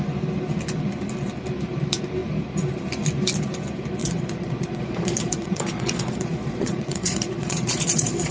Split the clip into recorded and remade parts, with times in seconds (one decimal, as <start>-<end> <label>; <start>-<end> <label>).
0.0-4.0 recorded; 4.0-8.3 remade